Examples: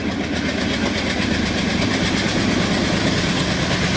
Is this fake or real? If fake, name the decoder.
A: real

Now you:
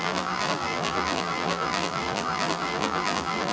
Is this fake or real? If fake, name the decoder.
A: fake, vocoder, BigVGAN v2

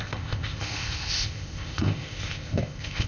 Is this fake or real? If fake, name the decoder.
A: fake, codec, ZipCodec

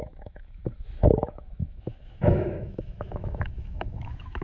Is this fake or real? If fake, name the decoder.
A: fake, autoencoder, DAC-VAE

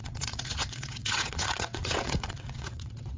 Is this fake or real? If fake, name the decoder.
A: fake, vocoder, WaveNeXt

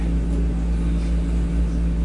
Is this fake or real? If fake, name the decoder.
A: real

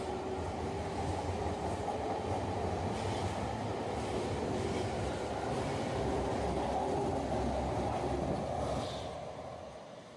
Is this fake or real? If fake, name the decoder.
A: real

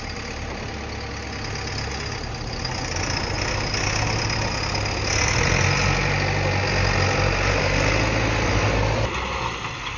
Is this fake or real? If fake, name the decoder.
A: real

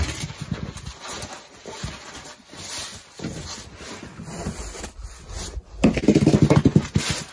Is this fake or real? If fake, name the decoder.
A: real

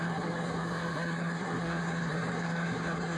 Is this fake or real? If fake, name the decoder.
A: fake, codec, SNAC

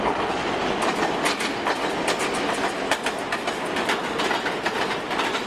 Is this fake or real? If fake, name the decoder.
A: real